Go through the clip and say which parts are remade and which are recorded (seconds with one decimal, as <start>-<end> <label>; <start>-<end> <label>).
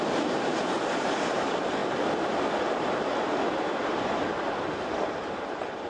0.0-1.8 remade; 1.8-3.8 recorded; 3.8-5.9 remade